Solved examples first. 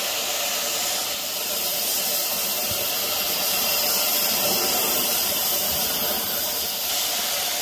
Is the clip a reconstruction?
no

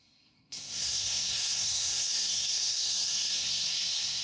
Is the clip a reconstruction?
yes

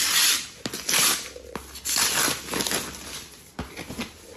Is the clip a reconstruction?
no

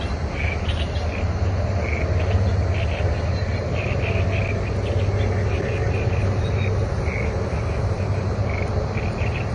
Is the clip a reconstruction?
no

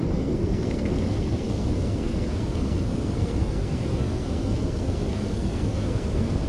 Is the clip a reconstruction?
yes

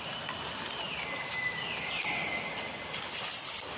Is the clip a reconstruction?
no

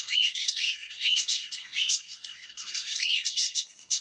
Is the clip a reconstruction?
yes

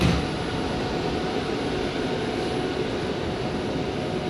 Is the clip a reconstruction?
no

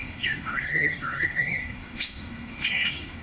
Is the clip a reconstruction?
yes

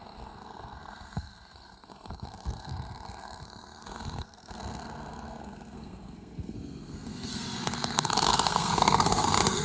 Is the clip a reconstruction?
yes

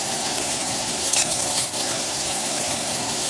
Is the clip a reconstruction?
yes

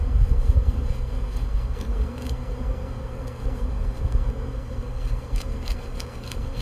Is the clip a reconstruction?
yes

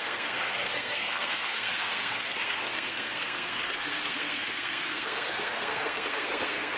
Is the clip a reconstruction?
yes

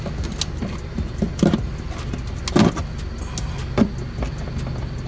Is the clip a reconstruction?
no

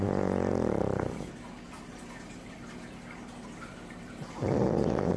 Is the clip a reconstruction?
no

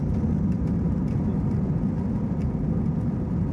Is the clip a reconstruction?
no